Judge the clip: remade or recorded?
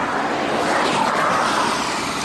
recorded